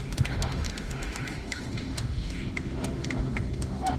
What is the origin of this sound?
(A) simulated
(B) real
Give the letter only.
A